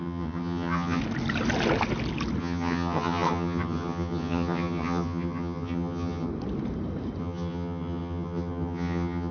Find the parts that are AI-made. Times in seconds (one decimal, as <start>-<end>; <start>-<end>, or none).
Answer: 0.0-1.0; 2.4-6.3; 7.2-9.3